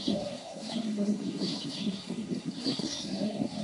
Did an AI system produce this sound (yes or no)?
yes